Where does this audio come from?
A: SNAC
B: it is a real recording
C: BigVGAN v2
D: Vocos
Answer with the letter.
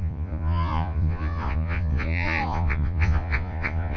D